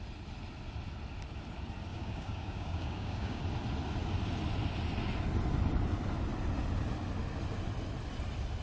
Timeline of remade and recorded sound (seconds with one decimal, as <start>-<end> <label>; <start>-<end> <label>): 0.0-1.9 recorded; 1.9-3.4 remade; 3.4-8.6 recorded